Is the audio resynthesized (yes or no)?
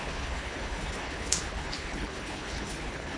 yes